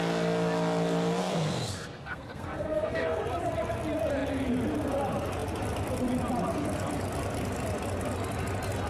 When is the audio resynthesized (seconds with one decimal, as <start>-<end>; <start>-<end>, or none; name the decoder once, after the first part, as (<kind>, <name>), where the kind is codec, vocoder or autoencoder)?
1.2-3.2 (codec, SNAC)